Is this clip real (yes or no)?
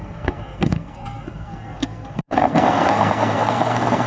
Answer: no